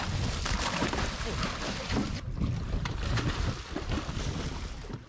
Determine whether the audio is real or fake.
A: real